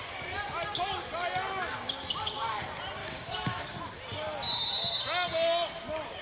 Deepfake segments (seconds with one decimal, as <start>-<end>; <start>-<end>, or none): 3.0-3.6